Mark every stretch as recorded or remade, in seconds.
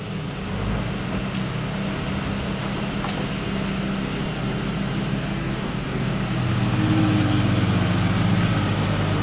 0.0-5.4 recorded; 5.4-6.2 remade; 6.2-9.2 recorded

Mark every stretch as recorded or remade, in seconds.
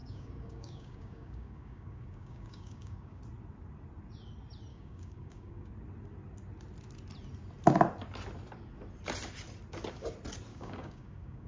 0.0-3.2 remade; 3.2-4.7 recorded; 4.7-5.7 remade; 5.7-10.5 recorded; 10.5-11.5 remade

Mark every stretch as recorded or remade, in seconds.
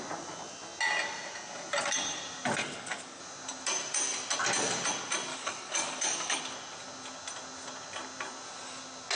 0.0-2.6 recorded; 2.6-3.2 remade; 3.2-5.3 recorded; 5.3-6.4 remade; 6.4-9.2 recorded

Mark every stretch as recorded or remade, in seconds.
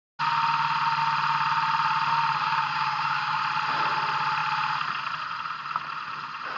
0.0-2.4 recorded; 2.4-3.4 remade; 3.4-6.6 recorded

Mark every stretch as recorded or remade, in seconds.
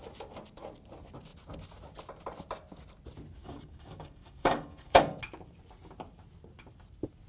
0.0-3.4 recorded; 3.4-5.0 remade; 5.0-7.3 recorded